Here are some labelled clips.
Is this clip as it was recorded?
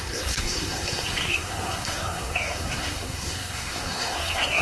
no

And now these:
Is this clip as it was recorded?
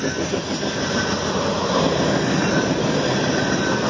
yes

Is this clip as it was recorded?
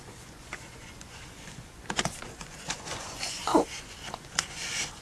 no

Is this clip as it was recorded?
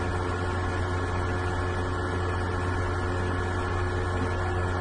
yes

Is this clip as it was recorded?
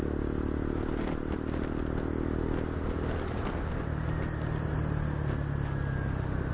yes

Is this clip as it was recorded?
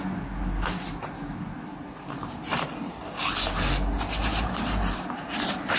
yes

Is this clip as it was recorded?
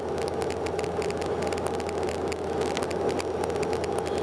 yes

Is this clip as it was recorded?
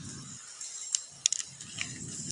yes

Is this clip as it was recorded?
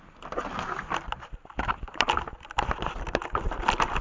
yes